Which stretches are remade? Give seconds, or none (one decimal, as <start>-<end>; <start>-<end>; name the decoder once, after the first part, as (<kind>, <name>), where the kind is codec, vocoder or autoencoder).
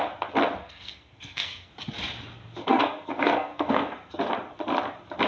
0.6-1.7 (codec, SNAC); 2.6-4.2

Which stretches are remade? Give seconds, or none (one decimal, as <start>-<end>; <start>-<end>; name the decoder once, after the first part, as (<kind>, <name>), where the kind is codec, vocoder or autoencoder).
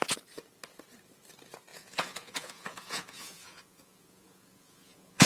1.7-5.3 (vocoder, Vocos)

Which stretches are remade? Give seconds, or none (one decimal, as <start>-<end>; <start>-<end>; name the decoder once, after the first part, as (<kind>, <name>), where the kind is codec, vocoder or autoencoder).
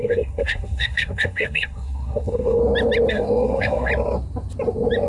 0.0-2.6 (codec, SNAC); 3.1-3.9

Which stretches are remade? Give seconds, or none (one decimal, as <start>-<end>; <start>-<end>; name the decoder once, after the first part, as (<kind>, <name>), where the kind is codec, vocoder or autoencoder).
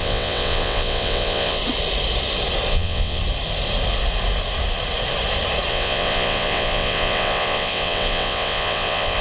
0.0-1.6 (vocoder, WaveNeXt); 2.7-3.2; 5.7-9.2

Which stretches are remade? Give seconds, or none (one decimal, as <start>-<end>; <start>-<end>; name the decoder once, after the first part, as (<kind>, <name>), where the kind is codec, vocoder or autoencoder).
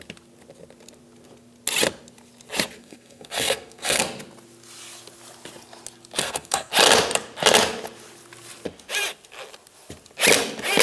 2.8-4.0 (codec, SNAC); 6.2-6.7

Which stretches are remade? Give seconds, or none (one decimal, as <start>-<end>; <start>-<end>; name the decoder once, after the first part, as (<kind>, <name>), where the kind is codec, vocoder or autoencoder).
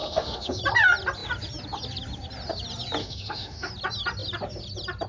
0.0-0.6 (autoencoder, DAC-VAE); 3.0-3.7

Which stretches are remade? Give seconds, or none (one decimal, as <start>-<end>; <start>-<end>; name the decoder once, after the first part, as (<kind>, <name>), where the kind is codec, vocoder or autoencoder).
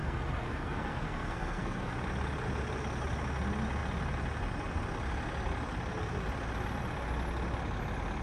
0.0-1.9 (codec, SNAC)